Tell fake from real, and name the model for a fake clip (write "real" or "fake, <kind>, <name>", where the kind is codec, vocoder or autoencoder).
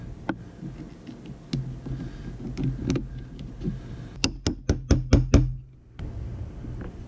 real